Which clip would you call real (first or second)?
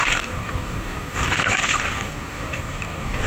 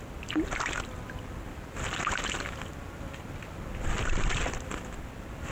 second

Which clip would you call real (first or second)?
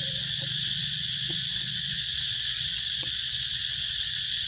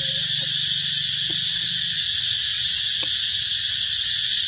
second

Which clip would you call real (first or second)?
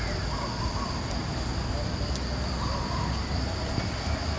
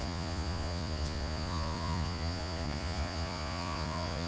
first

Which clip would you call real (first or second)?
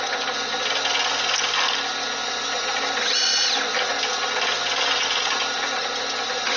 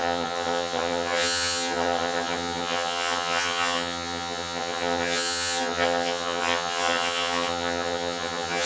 first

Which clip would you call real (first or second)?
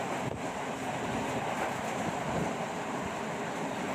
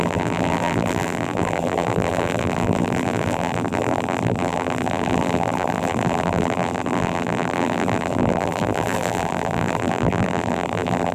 first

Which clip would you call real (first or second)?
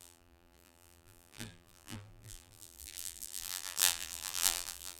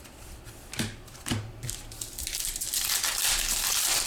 second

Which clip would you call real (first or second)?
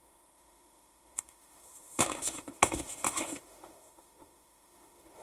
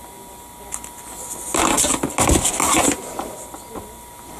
second